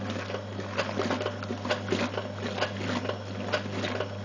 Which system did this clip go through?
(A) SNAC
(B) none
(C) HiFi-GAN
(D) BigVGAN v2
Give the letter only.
B